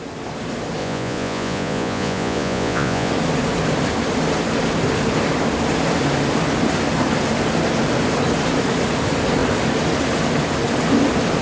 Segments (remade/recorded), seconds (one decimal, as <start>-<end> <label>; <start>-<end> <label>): 0.0-0.8 recorded; 0.8-3.1 remade; 3.1-11.4 recorded